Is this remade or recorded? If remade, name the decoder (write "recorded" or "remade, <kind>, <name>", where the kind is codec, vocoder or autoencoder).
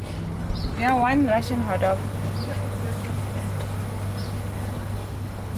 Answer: recorded